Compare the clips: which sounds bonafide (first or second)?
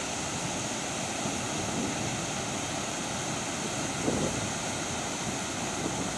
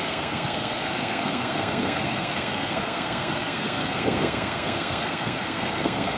first